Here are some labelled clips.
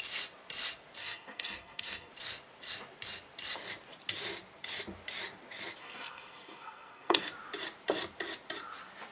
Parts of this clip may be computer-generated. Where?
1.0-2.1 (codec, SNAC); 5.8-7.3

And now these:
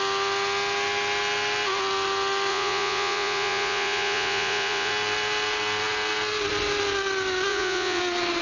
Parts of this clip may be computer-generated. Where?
2.5-4.9 (vocoder, Vocos); 7.5-8.0

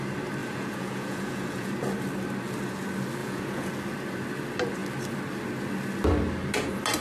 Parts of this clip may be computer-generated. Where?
0.4-1.7 (vocoder, Vocos); 3.2-3.7

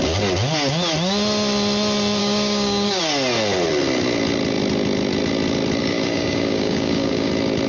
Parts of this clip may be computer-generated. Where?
2.2-3.0 (codec, DAC); 5.8-7.3

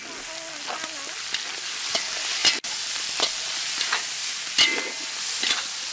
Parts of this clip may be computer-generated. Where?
none

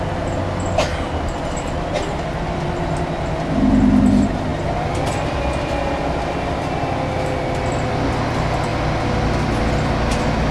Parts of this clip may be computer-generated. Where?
none

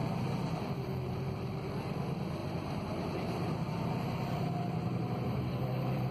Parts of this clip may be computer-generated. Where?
0.0-1.7 (vocoder, BigVGAN v2); 2.4-6.1